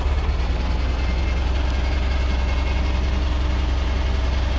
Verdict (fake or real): real